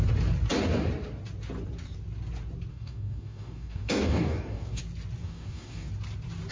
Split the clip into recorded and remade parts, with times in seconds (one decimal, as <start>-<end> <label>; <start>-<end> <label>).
0.0-2.7 recorded; 2.7-4.8 remade; 4.8-5.2 recorded; 5.2-5.9 remade; 5.9-6.5 recorded